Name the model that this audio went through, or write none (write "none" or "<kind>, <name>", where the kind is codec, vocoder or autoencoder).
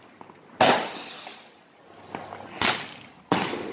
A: none